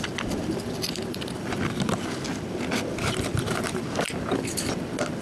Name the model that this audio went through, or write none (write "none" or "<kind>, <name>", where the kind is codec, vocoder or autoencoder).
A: vocoder, BigVGAN v2